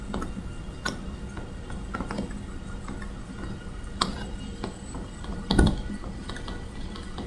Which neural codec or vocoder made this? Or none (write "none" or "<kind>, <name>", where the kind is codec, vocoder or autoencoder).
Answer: none